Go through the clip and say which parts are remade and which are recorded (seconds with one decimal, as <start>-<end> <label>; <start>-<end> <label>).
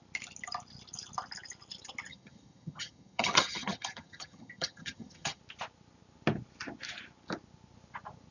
0.0-2.1 recorded; 2.1-5.4 remade; 5.4-8.3 recorded